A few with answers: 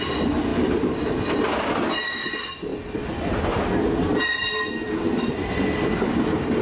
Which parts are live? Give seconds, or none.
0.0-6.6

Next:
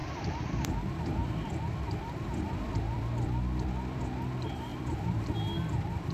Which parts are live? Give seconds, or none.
0.7-1.2; 4.0-4.7; 5.2-6.1

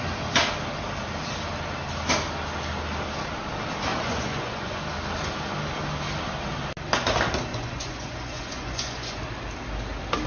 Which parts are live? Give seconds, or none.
0.0-3.9; 4.8-7.5; 9.2-10.3

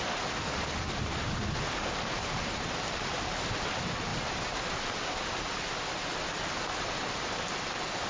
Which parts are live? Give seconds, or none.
0.0-8.1

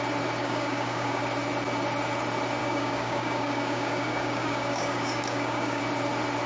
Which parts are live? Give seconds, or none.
0.0-0.4; 1.2-2.6; 5.8-6.5

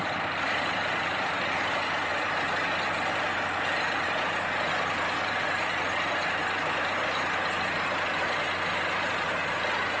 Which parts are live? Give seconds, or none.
2.1-3.1; 6.4-9.0